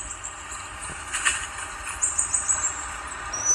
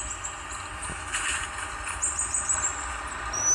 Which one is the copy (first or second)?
first